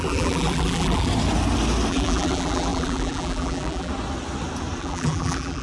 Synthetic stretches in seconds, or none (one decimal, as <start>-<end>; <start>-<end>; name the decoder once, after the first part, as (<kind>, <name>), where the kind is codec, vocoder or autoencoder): 0.0-1.1 (vocoder, BigVGAN v2); 1.9-3.9; 4.8-5.6